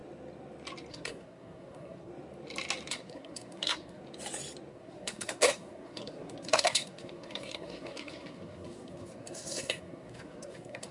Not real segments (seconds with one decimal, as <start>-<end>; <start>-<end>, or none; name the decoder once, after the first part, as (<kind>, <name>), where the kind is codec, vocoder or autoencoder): 0.9-2.1 (codec, SNAC); 2.9-4.0; 4.7-10.9